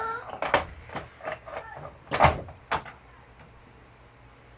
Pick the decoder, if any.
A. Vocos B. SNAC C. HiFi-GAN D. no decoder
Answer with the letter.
D